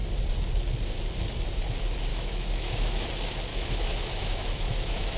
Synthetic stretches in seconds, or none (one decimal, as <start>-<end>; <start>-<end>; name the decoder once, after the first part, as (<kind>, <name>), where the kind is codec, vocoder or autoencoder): 2.1-3.1 (autoencoder, DAC-VAE); 3.5-5.2